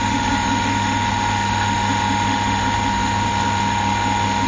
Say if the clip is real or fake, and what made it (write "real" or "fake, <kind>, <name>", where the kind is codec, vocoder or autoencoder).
fake, autoencoder, DAC-VAE